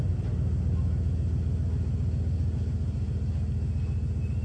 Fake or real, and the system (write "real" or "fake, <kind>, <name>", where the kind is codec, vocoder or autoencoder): real